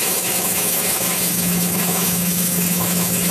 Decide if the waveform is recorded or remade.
remade